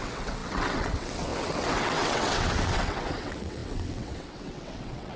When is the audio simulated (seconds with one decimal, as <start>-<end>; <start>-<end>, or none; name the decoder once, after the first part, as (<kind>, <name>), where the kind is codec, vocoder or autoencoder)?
0.0-5.2 (vocoder, WaveNeXt)